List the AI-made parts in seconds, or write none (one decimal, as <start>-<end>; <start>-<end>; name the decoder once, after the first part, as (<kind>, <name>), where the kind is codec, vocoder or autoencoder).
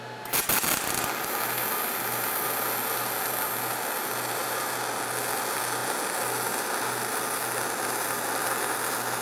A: none